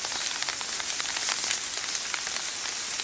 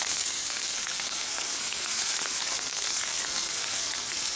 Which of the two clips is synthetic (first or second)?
second